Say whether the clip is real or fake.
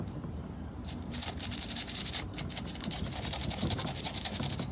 fake